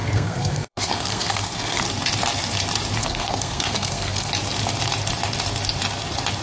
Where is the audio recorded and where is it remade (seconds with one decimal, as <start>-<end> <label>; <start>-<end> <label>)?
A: 0.0-1.8 remade; 1.8-3.0 recorded; 3.0-4.3 remade; 4.3-6.4 recorded